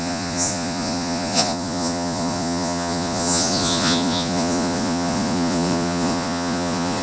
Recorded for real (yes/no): no